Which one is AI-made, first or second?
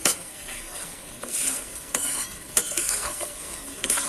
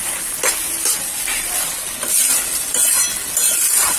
first